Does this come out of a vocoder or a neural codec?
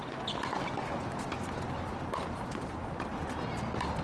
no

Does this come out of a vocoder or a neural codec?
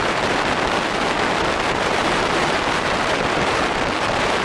yes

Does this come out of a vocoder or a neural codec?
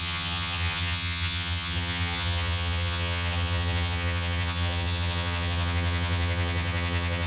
yes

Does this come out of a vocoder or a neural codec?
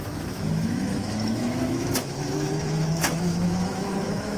yes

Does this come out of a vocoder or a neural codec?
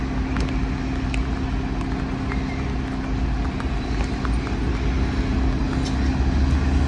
no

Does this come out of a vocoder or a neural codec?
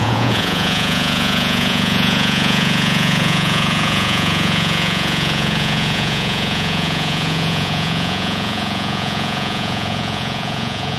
yes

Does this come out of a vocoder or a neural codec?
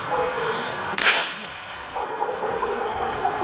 yes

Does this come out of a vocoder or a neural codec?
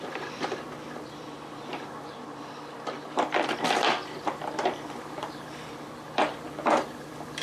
yes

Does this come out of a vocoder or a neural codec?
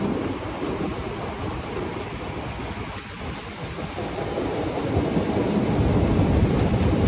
no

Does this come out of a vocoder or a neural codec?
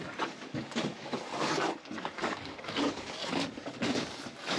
yes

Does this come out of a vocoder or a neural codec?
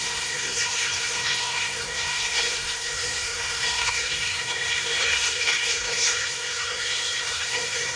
yes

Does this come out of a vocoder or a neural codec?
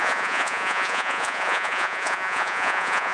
yes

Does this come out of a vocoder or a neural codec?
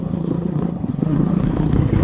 yes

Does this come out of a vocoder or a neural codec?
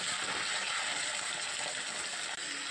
no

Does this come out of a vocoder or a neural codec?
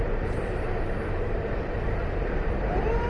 yes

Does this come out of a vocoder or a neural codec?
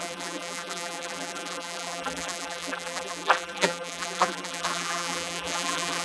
yes